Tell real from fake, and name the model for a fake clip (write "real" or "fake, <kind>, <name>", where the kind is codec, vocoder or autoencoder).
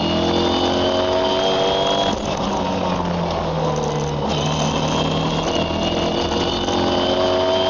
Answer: real